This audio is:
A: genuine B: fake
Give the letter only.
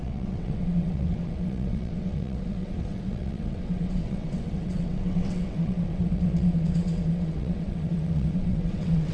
B